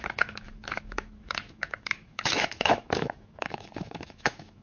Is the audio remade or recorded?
remade